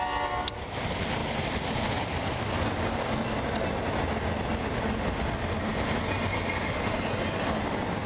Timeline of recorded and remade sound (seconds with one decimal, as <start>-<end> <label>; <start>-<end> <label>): 0.0-8.1 recorded

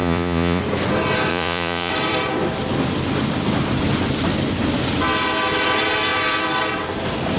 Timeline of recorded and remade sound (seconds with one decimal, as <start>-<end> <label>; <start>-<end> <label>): 0.0-0.6 remade; 0.6-1.3 recorded; 1.3-1.9 remade; 1.9-7.4 recorded

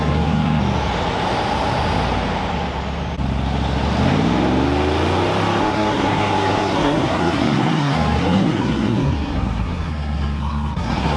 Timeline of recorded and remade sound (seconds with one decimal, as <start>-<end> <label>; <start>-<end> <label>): 0.0-0.6 remade; 0.6-5.6 recorded; 5.6-11.2 remade

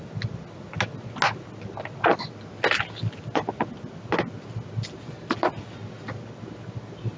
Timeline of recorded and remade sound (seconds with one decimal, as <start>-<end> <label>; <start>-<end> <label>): 0.0-7.2 recorded

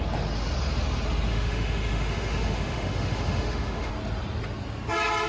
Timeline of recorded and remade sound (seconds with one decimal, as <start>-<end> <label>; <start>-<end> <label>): 0.0-1.3 recorded; 1.3-3.9 remade; 3.9-5.3 recorded

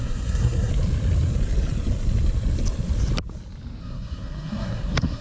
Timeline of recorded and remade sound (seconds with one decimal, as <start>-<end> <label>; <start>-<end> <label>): 0.0-0.7 remade; 0.7-3.8 recorded; 3.8-5.2 remade

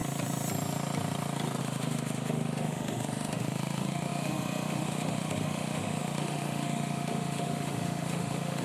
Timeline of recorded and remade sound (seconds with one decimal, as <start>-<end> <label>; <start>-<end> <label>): 0.0-1.6 recorded; 1.6-8.6 remade